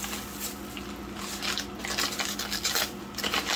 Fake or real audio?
real